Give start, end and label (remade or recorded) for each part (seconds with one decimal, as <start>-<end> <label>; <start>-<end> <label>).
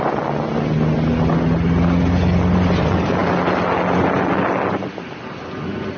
0.0-6.0 recorded